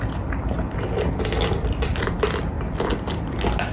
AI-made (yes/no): no